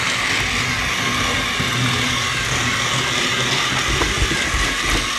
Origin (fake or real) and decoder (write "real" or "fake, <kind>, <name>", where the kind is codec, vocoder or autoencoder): real